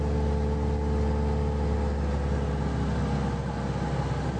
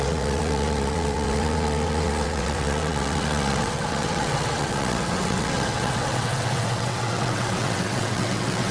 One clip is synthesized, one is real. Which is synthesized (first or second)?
second